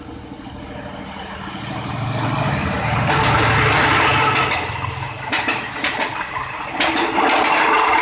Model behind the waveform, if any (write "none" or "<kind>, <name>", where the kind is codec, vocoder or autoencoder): none